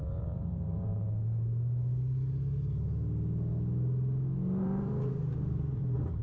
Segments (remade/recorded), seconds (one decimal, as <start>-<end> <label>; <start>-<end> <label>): 0.0-0.9 remade; 0.9-4.6 recorded; 4.6-6.2 remade